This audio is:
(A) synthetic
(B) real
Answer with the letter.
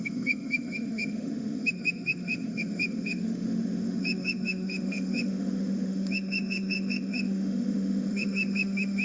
A